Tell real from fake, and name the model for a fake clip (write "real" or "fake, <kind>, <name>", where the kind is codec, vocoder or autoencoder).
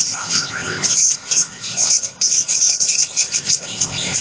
fake, codec, ZipCodec